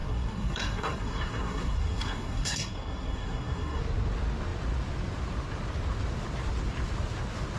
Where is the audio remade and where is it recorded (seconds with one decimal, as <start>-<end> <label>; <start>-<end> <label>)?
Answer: 0.0-3.8 remade; 3.8-7.6 recorded